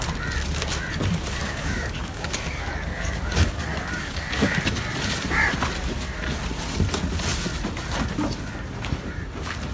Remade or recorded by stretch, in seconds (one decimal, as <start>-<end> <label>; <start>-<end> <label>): 0.0-1.4 recorded; 1.4-4.6 remade; 4.6-9.7 recorded